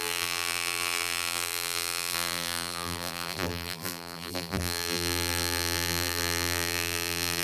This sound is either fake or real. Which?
fake